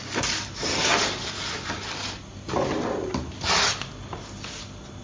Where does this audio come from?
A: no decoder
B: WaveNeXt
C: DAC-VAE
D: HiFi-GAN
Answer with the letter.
A